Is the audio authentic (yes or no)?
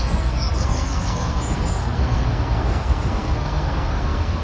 no